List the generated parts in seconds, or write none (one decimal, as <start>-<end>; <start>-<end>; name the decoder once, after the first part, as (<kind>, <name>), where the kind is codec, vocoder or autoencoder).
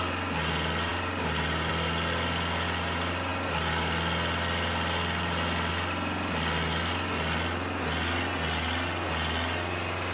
none